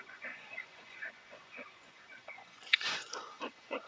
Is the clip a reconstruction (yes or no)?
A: yes